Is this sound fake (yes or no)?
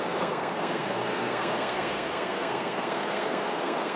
yes